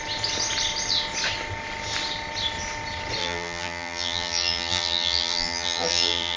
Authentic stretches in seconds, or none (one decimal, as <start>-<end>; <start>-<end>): 0.0-3.2